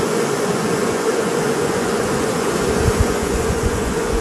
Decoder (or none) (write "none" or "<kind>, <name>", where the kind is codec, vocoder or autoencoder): vocoder, Vocos